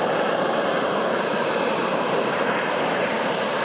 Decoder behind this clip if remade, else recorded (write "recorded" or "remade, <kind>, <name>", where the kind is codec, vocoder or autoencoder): remade, vocoder, BigVGAN v2